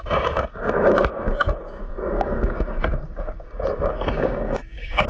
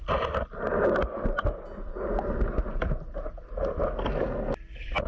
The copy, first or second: first